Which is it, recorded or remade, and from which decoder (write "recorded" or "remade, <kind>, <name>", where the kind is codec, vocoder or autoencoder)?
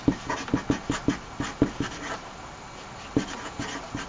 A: recorded